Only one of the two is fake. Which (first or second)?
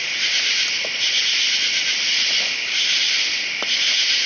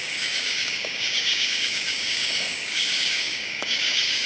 second